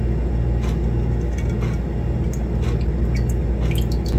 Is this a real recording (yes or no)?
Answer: yes